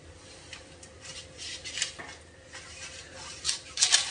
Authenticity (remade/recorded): recorded